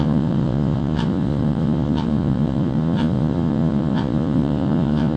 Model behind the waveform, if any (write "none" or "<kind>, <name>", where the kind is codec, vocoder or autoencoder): vocoder, Vocos